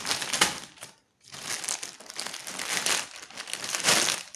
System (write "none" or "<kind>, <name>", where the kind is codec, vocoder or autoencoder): none